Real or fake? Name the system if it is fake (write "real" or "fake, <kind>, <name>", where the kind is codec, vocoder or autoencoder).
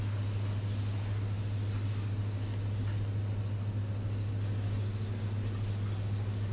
real